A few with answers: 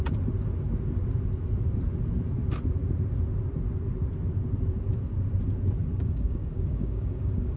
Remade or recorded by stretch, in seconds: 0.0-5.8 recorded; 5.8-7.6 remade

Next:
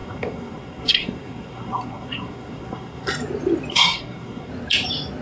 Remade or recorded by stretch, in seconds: 0.0-3.1 remade; 3.1-3.7 recorded; 3.7-4.5 remade; 4.5-5.2 recorded